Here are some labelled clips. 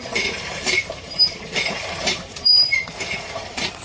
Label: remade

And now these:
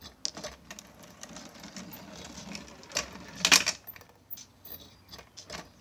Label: recorded